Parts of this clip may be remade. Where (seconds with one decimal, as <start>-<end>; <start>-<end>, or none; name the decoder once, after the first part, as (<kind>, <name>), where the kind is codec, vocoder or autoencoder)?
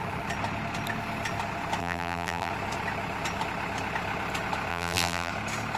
1.8-2.5 (vocoder, BigVGAN v2); 4.7-5.3